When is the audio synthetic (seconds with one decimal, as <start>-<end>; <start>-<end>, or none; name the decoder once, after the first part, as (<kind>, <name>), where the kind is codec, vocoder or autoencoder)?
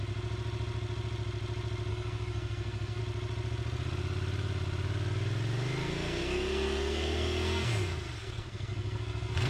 1.9-3.0 (codec, SNAC); 5.8-9.5